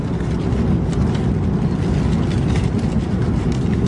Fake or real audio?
real